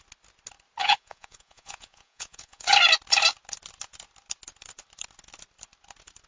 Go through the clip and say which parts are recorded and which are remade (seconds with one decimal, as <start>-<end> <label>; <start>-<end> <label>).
0.0-0.8 recorded; 0.8-2.7 remade; 2.7-6.3 recorded